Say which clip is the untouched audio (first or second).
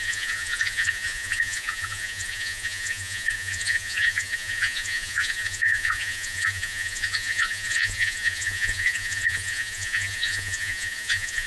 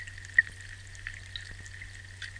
second